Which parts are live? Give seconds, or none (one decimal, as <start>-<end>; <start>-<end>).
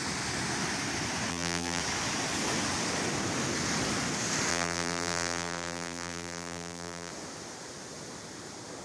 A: 0.0-1.3; 1.8-4.5; 7.1-8.8